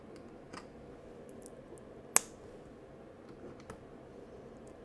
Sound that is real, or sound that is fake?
real